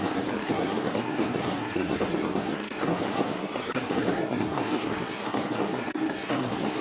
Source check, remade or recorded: remade